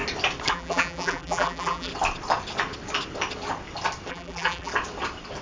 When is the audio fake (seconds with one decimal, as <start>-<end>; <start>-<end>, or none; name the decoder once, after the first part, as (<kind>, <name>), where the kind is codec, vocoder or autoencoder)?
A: 0.5-1.9 (vocoder, BigVGAN v2); 4.1-4.7